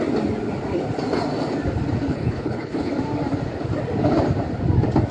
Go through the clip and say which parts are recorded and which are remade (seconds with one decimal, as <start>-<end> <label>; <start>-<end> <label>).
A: 0.0-2.1 recorded; 2.1-2.9 remade; 2.9-5.1 recorded